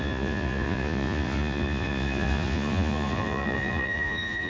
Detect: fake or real fake